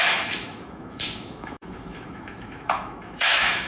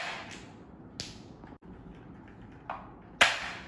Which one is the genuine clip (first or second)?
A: second